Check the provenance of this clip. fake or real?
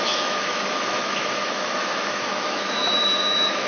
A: fake